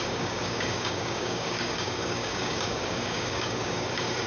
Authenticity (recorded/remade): remade